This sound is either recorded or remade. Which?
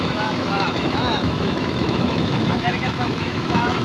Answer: remade